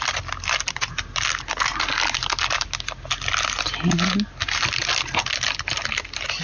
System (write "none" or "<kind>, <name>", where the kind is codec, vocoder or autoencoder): none